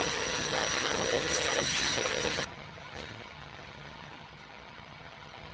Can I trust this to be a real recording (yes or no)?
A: no